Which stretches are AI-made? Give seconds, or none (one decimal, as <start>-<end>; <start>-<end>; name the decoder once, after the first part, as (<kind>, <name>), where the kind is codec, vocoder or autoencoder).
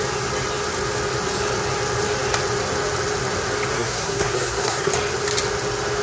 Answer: 3.7-4.9 (codec, SNAC)